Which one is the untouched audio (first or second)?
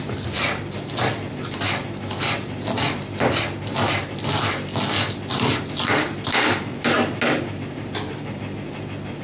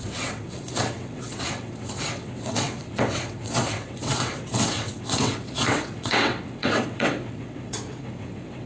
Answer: first